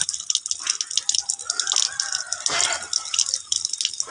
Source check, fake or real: real